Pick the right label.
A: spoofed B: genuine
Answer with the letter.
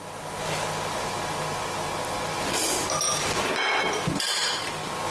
B